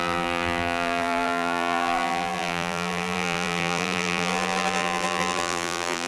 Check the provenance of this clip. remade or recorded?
remade